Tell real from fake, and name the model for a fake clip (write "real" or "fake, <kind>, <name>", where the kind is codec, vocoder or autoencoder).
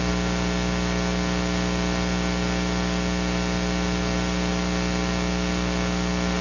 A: real